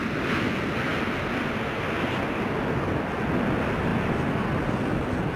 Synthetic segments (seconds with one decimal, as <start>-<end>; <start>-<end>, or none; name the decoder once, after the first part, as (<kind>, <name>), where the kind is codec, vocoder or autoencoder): none